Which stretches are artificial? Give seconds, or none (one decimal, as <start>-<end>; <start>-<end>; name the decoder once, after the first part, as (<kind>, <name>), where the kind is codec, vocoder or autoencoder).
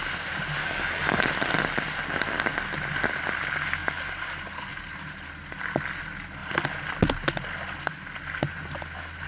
0.6-1.2 (codec, DAC)